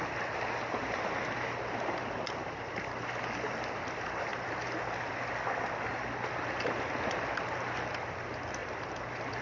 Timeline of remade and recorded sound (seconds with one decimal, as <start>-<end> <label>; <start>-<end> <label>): 0.0-9.4 recorded